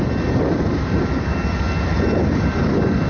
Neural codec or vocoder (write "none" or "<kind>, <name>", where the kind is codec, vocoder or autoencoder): none